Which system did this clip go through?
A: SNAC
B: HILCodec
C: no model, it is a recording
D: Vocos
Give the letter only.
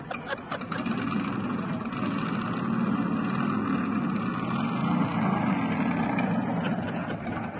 C